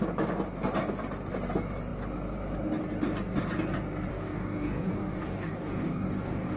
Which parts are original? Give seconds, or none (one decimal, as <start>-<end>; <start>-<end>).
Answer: 0.0-4.1